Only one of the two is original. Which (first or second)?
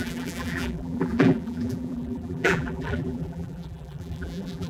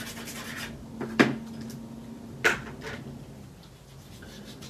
second